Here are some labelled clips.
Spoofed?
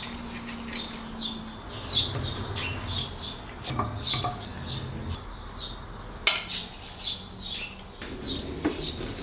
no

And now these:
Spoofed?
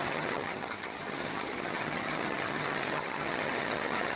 yes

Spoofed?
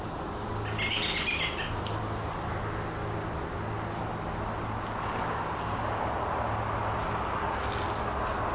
no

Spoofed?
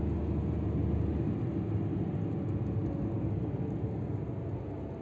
no